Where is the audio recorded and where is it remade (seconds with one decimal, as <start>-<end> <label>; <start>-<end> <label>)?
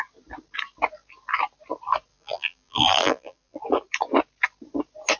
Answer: 0.0-2.1 recorded; 2.1-3.6 remade; 3.6-5.2 recorded